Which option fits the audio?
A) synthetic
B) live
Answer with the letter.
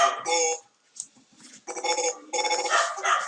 B